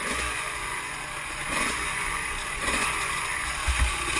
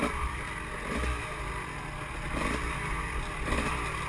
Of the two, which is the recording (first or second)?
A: second